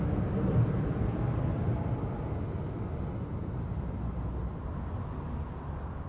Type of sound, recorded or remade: recorded